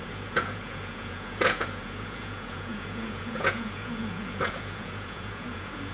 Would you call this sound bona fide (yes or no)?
no